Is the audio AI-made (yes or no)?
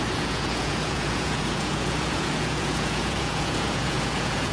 yes